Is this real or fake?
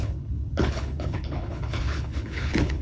fake